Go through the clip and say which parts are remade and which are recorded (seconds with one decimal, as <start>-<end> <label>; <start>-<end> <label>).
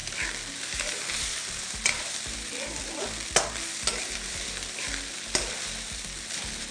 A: 0.0-0.9 recorded; 0.9-6.7 remade